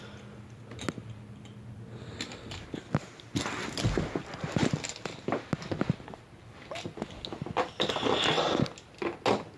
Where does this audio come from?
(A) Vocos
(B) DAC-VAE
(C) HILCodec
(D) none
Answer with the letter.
D